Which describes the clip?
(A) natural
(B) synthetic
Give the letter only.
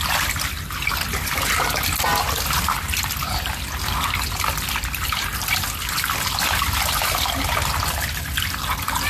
A